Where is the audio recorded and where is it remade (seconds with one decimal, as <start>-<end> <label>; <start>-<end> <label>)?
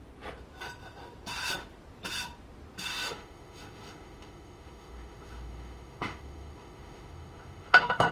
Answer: 0.0-2.9 recorded; 2.9-8.1 remade